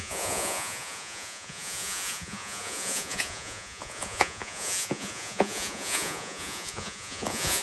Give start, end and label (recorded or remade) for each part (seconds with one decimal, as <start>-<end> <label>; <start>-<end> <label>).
0.0-7.6 remade